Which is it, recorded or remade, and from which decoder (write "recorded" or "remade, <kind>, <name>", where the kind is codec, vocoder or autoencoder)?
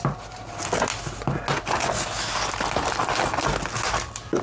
recorded